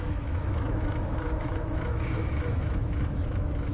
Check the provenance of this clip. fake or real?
fake